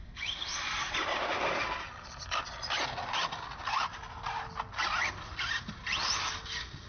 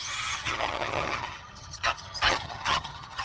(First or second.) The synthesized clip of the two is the second